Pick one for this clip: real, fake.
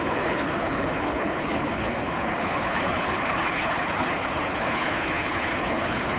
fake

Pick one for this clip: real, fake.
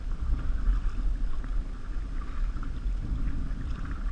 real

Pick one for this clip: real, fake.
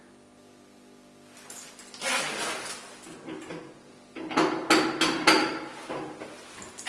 real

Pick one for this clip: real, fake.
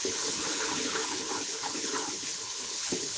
fake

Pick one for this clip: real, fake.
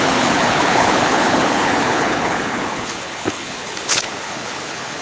fake